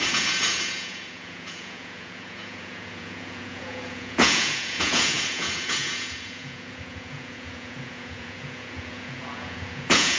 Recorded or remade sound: remade